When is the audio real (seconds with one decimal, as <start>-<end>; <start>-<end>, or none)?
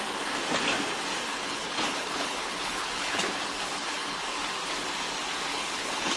0.0-1.3; 4.5-5.5